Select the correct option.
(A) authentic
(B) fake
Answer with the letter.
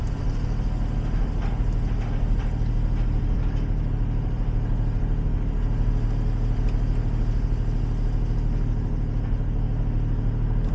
A